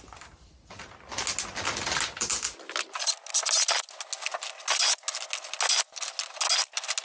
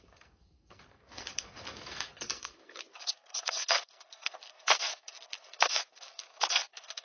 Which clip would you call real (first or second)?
first